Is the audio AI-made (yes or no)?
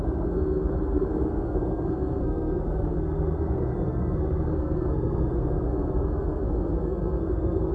yes